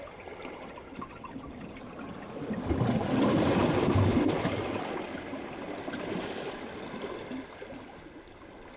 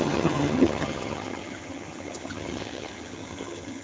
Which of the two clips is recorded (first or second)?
first